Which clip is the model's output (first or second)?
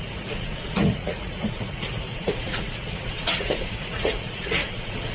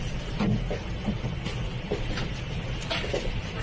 first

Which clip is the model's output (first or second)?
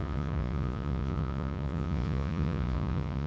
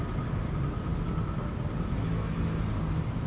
first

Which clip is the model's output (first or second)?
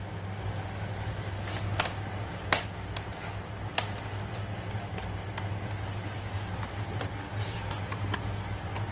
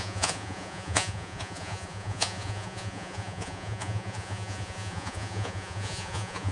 second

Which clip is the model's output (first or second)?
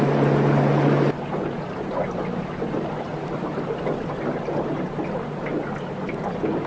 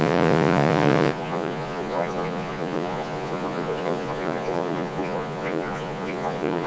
second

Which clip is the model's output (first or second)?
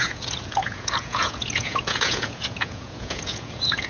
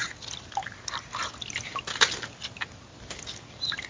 first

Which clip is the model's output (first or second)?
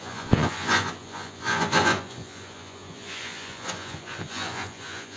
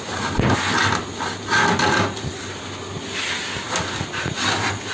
first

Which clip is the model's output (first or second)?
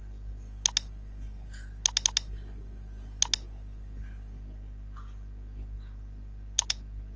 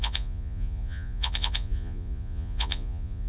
second